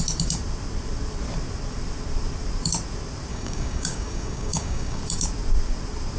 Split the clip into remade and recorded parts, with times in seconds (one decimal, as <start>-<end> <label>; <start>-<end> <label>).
0.0-3.3 recorded; 3.3-5.0 remade; 5.0-6.2 recorded